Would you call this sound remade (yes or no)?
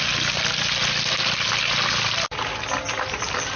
no